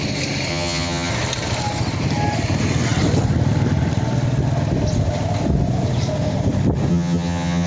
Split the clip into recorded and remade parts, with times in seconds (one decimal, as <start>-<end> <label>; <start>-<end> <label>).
0.0-0.5 recorded; 0.5-1.1 remade; 1.1-6.9 recorded; 6.9-7.7 remade